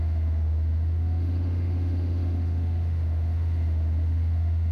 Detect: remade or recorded remade